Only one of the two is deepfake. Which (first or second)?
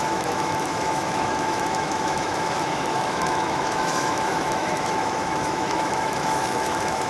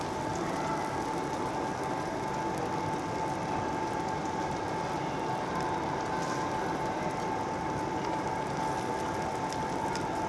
first